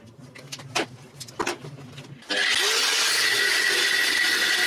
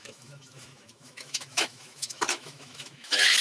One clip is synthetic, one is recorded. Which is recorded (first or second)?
first